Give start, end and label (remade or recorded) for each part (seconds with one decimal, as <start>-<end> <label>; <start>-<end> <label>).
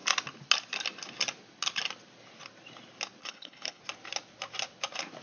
0.0-3.2 recorded; 3.2-3.8 remade; 3.8-5.2 recorded